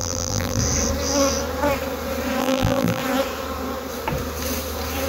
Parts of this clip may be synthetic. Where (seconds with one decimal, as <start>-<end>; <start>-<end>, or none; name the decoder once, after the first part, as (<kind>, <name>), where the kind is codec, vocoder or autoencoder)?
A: 0.0-0.6 (vocoder, BigVGAN v2); 2.4-3.0